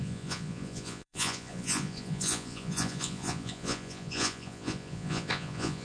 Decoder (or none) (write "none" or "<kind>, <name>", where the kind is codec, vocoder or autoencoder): vocoder, Vocos